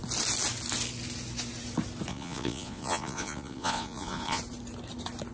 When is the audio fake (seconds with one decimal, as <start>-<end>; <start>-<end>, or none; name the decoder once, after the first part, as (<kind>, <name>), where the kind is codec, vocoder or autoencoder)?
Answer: 2.1-4.4 (vocoder, Vocos)